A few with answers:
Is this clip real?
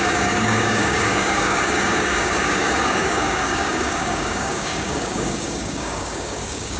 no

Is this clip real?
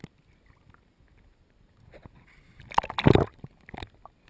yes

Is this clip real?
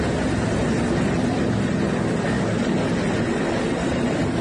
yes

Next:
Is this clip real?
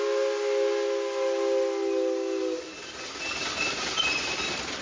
yes